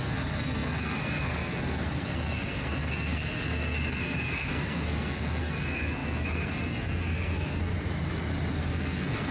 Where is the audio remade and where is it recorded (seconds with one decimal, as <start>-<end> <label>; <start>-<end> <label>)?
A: 0.0-7.7 remade; 7.7-8.5 recorded; 8.5-9.3 remade

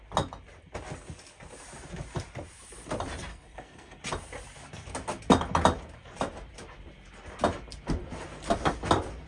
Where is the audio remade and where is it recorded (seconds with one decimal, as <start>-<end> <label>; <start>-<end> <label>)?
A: 0.0-3.3 recorded; 3.3-4.0 remade; 4.0-9.3 recorded

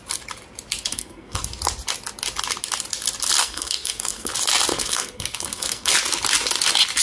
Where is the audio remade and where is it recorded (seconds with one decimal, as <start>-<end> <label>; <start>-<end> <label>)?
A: 0.0-0.9 recorded; 0.9-1.4 remade; 1.4-3.4 recorded; 3.4-4.3 remade; 4.3-4.7 recorded; 4.7-5.9 remade; 5.9-7.0 recorded

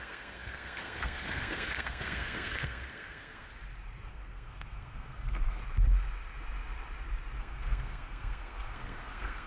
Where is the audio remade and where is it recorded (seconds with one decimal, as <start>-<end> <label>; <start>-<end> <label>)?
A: 0.0-3.5 remade; 3.5-4.1 recorded; 4.1-5.6 remade; 5.6-7.4 recorded; 7.4-9.5 remade

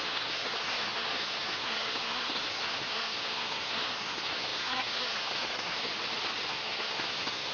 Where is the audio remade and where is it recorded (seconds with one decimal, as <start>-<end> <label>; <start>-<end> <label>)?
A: 0.0-5.9 remade; 5.9-6.5 recorded; 6.5-7.5 remade